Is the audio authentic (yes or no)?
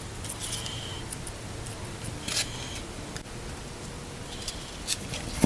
yes